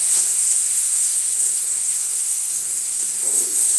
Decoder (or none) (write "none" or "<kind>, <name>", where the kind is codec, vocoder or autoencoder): codec, SNAC